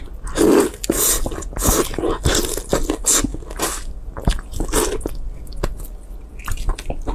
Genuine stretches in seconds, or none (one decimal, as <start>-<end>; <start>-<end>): 0.0-7.1